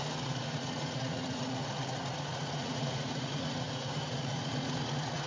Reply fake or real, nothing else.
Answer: fake